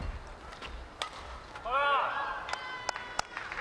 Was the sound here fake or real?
real